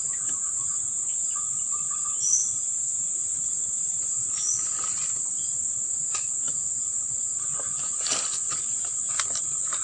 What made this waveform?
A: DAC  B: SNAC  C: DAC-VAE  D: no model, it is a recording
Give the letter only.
D